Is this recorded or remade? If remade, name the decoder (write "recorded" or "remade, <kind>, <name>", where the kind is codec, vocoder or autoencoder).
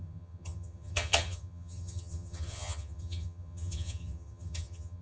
remade, vocoder, HiFi-GAN